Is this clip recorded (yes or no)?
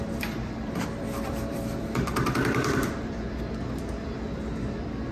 no